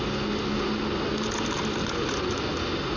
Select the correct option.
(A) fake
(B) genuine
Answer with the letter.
B